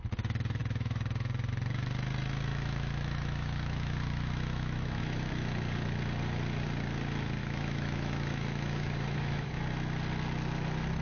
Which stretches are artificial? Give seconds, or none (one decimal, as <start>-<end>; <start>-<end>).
0.6-1.5; 2.5-5.3; 7.4-9.6